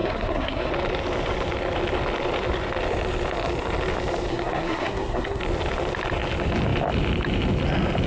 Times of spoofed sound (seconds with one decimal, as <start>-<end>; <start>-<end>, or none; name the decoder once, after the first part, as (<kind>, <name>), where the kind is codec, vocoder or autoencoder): 0.0-0.7 (codec, SNAC); 4.3-5.4